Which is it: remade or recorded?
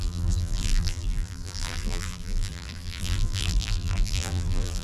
remade